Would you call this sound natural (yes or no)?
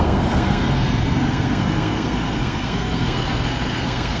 no